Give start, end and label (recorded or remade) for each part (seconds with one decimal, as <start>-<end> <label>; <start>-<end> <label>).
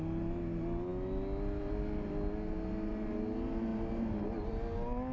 0.0-5.1 recorded